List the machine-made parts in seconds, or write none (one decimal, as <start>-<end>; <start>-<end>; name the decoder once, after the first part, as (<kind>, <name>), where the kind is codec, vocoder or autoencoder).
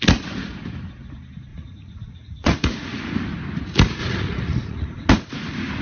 1.5-3.0 (vocoder, Vocos); 4.0-5.1